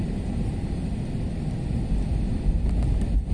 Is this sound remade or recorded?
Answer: recorded